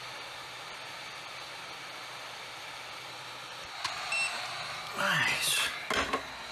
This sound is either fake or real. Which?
real